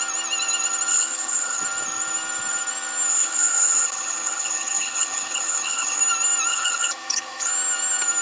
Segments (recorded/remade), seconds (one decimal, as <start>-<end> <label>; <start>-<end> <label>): 0.0-0.9 recorded; 0.9-1.6 remade; 1.6-3.1 recorded; 3.1-6.0 remade; 6.0-6.5 recorded; 6.5-7.5 remade; 7.5-8.2 recorded

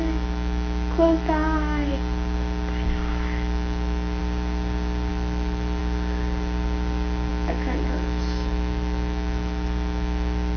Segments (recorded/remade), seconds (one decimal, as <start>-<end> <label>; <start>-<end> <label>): 0.0-1.9 remade; 1.9-3.1 recorded; 3.1-4.2 remade; 4.2-5.1 recorded; 5.1-5.8 remade; 5.8-7.3 recorded; 7.3-10.6 remade